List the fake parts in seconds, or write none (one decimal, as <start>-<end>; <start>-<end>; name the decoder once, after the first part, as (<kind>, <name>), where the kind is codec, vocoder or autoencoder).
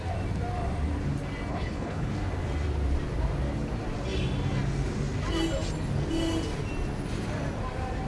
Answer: 1.5-2.1 (codec, HILCodec)